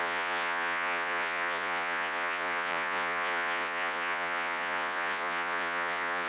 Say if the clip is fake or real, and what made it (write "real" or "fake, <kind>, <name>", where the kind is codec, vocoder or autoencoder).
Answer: fake, vocoder, Vocos